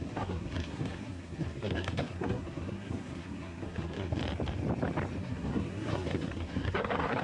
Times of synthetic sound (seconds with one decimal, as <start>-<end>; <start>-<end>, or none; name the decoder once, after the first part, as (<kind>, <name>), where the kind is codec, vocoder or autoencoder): 0.0-4.2 (codec, SNAC); 5.2-7.2